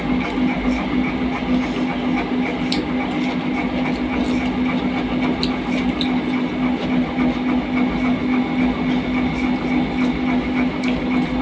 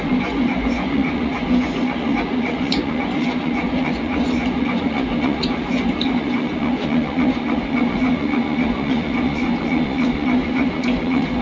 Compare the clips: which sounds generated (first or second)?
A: second